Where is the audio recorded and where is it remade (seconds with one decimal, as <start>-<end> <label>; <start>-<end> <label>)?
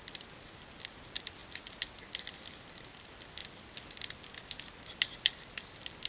0.0-6.1 recorded